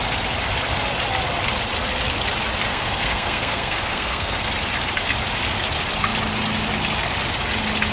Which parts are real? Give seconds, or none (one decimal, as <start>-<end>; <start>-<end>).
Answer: 0.0-2.7; 4.5-7.9